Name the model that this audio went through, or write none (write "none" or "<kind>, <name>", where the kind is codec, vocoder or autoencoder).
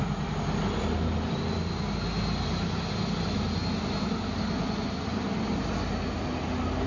none